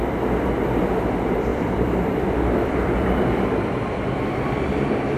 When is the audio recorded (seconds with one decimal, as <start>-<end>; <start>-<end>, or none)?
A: 0.0-1.5; 4.5-5.2